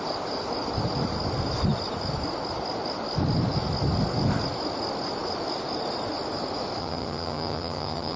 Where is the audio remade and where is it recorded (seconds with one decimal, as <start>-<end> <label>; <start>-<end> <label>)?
0.0-6.8 recorded; 6.8-8.2 remade